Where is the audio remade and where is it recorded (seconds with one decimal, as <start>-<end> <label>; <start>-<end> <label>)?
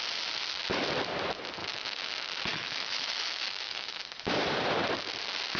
0.0-1.6 recorded; 1.6-2.1 remade; 2.1-2.5 recorded; 2.5-4.0 remade; 4.0-5.6 recorded